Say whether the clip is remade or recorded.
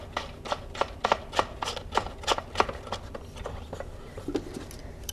recorded